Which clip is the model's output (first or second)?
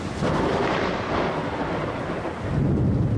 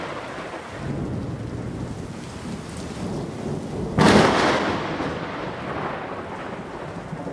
first